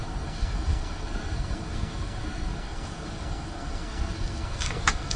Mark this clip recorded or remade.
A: remade